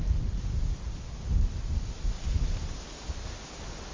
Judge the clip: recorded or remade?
recorded